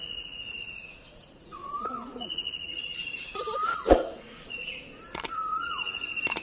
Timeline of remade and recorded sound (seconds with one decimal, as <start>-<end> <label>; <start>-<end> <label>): 0.0-6.4 remade